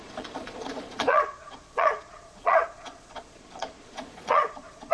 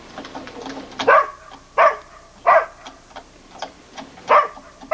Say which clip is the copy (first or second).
first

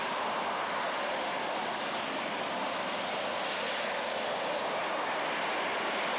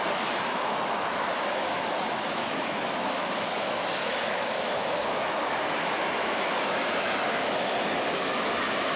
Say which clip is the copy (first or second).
second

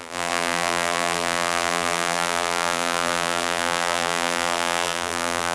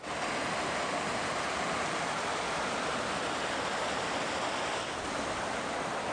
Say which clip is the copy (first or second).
first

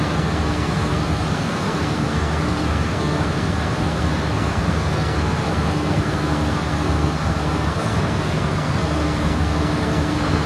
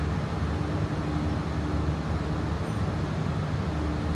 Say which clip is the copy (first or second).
first